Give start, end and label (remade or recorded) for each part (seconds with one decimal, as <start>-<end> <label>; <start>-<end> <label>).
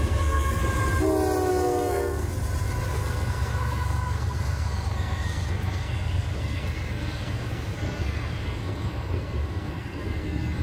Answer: 0.0-0.6 remade; 0.6-1.5 recorded; 1.5-2.3 remade; 2.3-2.9 recorded; 2.9-10.6 remade